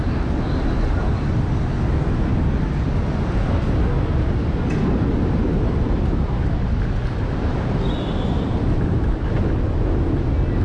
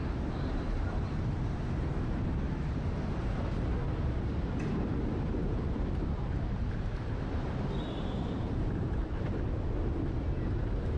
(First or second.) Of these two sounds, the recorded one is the first